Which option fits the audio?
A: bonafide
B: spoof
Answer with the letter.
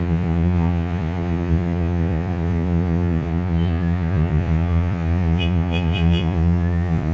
B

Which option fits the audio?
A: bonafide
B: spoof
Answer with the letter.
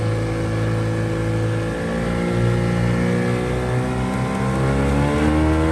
A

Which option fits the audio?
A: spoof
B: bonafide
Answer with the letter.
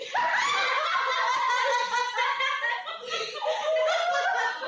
B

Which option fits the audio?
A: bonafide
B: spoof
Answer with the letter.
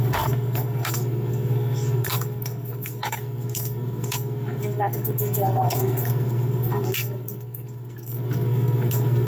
B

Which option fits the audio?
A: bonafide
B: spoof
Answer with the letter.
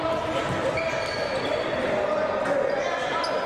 A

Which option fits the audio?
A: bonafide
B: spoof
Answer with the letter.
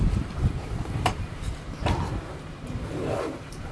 B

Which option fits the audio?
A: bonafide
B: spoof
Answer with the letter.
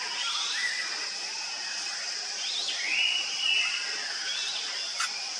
A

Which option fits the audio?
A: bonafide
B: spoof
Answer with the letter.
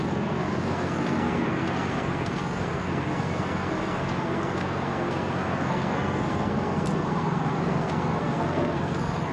B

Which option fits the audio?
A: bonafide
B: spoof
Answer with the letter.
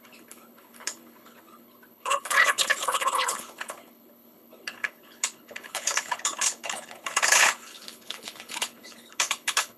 B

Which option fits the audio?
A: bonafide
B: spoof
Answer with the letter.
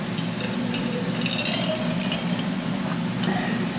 A